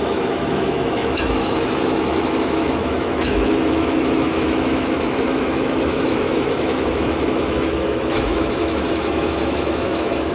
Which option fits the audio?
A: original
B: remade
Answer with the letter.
B